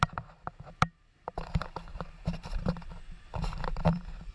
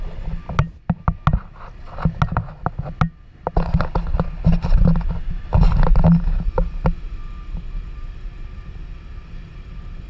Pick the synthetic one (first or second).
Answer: first